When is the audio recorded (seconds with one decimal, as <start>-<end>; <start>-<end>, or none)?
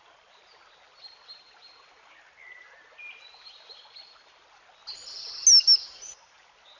0.0-6.8